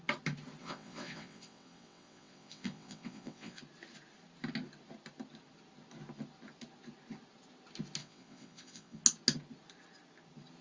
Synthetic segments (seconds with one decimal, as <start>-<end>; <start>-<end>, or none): 0.6-3.6; 8.0-9.0